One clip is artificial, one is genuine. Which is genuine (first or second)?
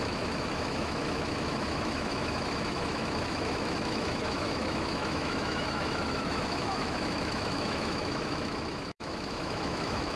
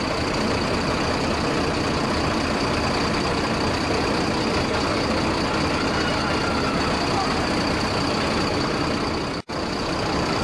second